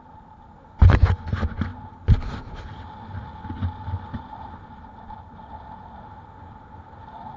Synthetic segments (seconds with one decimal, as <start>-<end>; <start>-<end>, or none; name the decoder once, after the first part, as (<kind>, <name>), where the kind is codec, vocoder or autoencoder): none